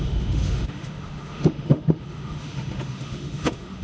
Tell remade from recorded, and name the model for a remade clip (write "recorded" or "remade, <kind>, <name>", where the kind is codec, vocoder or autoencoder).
remade, autoencoder, DAC-VAE